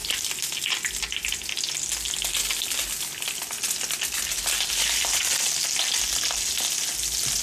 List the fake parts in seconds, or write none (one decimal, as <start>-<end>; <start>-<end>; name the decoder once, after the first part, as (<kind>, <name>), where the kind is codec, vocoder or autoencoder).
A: none